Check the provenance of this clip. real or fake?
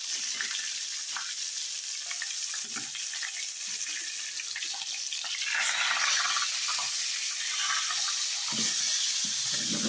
real